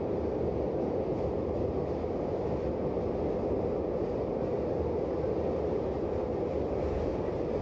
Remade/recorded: recorded